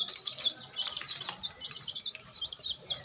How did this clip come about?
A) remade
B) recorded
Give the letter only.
A